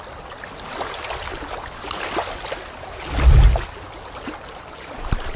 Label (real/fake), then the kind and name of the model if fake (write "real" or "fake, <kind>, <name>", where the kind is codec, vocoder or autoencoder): real